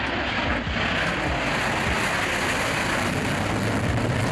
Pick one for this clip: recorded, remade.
recorded